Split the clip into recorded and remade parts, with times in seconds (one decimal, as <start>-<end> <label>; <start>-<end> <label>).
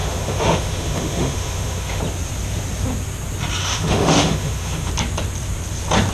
0.0-2.0 remade; 2.0-3.6 recorded; 3.6-4.9 remade; 4.9-6.1 recorded